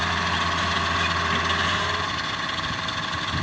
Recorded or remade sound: recorded